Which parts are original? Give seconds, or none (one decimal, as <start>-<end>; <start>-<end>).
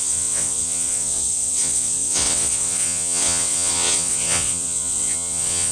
none